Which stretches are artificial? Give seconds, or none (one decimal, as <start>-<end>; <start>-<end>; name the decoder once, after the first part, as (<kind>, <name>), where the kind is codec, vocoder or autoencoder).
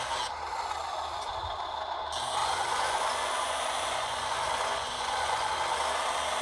2.4-5.5 (vocoder, Vocos)